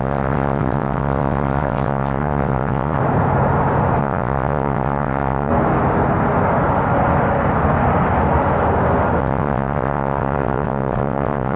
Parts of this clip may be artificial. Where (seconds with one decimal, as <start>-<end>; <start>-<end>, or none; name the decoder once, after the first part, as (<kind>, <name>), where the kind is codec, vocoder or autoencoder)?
0.0-3.0 (vocoder, WaveNeXt); 4.0-5.5; 9.2-11.6